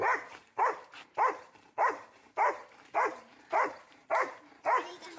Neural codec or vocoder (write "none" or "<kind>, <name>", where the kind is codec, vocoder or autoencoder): vocoder, BigVGAN v2